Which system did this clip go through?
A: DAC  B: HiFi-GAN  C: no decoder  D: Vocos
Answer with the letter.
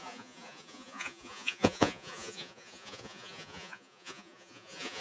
D